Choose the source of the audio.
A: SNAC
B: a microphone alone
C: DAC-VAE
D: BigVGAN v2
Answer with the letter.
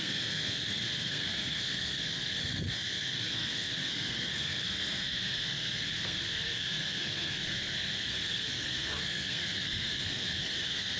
A